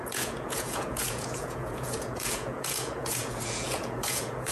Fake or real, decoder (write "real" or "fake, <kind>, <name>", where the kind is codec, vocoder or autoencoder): fake, vocoder, Vocos